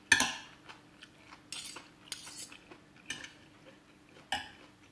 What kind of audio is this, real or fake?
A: real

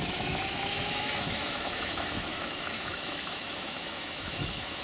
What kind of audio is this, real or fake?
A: fake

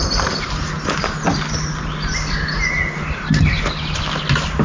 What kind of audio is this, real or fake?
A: real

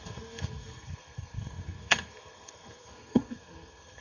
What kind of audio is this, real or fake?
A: fake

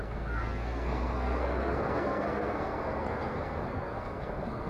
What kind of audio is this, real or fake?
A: fake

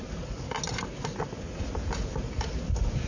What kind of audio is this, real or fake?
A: real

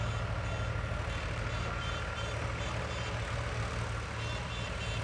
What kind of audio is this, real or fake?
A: real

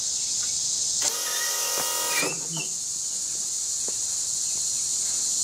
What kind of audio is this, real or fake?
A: real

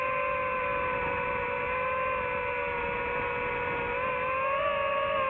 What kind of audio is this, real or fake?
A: real